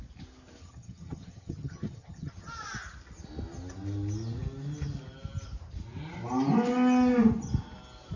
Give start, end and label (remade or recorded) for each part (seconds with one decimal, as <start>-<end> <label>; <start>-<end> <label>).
0.0-0.6 recorded; 0.6-2.5 remade; 2.5-8.2 recorded